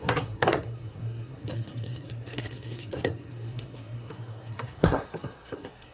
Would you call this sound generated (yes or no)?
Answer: yes